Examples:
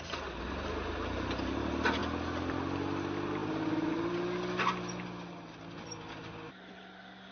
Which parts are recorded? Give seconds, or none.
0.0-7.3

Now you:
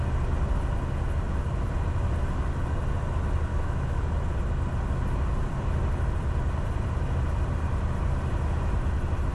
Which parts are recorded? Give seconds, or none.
0.0-3.5; 4.0-9.3

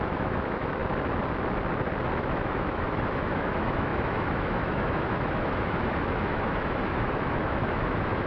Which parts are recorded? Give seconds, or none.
0.8-2.1

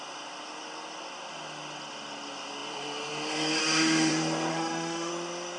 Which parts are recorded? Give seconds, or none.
0.0-3.6; 4.1-4.5; 5.1-5.6